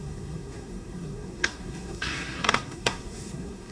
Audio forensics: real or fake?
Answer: fake